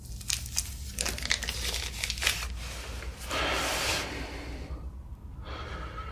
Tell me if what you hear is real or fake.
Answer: real